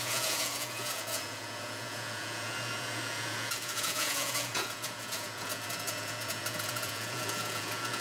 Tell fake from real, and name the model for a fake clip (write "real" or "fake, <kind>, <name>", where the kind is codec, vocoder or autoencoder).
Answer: fake, vocoder, Vocos